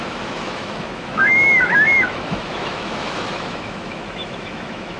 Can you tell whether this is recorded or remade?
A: remade